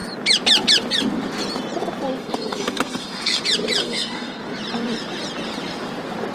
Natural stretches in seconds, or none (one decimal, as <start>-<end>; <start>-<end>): 0.0-2.2; 3.4-3.8; 4.4-6.3